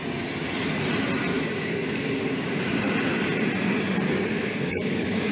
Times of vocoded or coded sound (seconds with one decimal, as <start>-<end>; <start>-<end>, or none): 1.3-2.9; 4.4-5.3